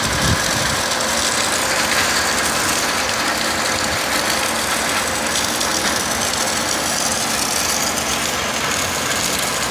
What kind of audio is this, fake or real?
real